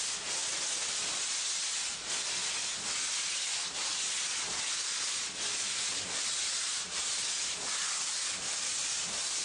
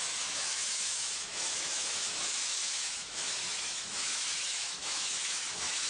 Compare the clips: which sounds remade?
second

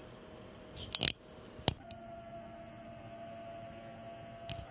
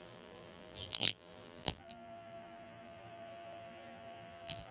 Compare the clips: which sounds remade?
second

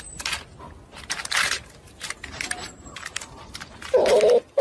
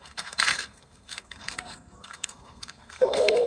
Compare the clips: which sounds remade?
second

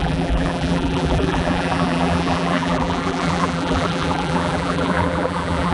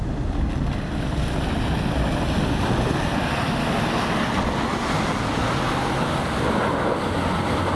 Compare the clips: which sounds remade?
first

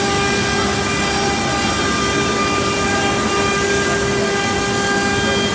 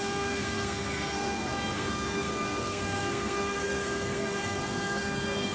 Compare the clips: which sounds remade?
second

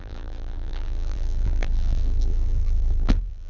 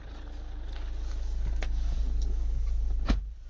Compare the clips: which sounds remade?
first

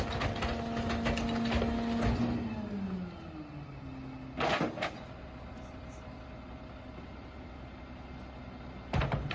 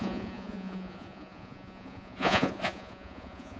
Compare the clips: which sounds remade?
second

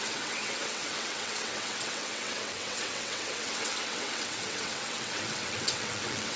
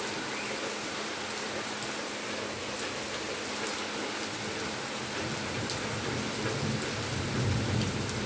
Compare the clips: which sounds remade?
first